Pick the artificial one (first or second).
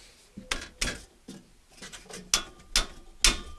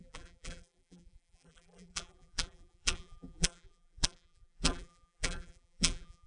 second